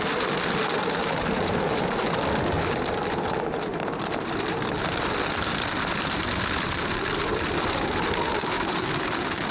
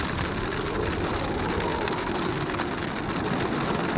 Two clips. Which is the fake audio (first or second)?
first